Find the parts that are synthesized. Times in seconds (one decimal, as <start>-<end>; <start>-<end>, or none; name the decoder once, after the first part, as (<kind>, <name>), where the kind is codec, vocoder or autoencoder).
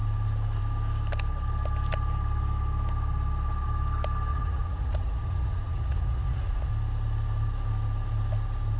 4.3-6.7 (vocoder, Vocos)